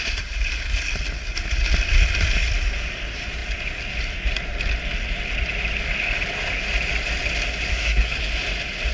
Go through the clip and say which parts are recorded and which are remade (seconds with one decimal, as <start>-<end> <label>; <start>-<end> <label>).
0.0-7.7 recorded; 7.7-8.2 remade; 8.2-8.9 recorded